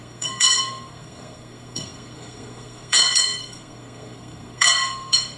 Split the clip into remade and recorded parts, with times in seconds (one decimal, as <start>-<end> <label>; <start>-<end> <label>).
0.0-5.4 remade

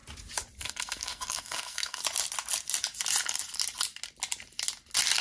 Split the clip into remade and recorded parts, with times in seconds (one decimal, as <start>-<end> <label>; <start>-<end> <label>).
0.0-0.6 recorded; 0.6-2.0 remade; 2.0-5.2 recorded